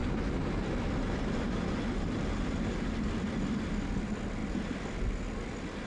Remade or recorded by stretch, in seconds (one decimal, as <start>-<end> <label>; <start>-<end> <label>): 0.0-5.9 recorded